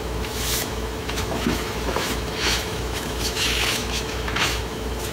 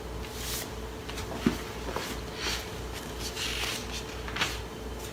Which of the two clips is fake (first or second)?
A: first